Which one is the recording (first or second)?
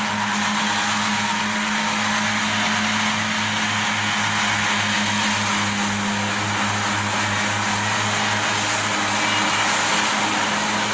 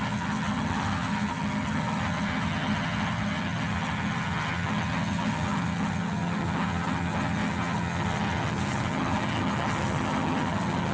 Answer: first